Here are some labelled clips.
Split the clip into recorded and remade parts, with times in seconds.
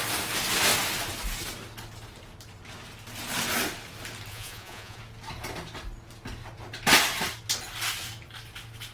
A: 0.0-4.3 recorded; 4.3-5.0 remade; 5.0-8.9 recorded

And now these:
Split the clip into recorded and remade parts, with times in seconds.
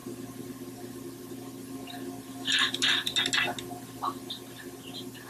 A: 0.0-5.3 recorded